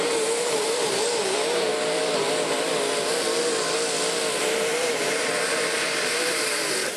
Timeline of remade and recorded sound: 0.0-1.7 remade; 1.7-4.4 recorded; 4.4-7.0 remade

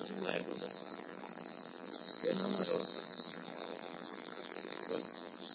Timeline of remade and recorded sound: 0.0-5.5 remade

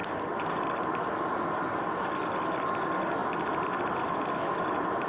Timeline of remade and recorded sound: 0.0-5.1 recorded

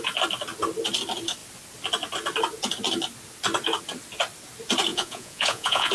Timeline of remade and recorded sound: 0.0-4.9 recorded; 4.9-5.9 remade